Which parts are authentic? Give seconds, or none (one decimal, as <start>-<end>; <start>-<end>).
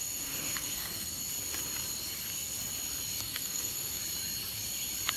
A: 1.2-3.2; 4.0-5.2